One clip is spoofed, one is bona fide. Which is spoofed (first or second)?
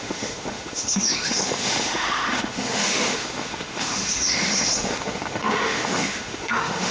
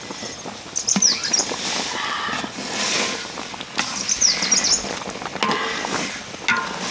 first